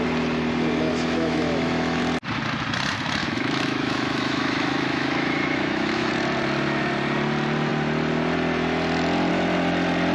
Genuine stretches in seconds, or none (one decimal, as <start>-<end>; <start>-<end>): 0.0-0.9; 2.0-3.2; 6.1-10.1